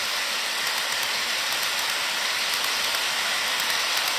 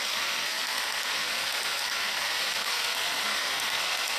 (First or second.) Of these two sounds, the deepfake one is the second